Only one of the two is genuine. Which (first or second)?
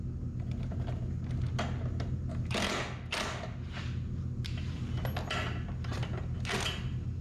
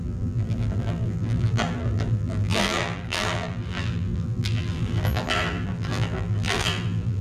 first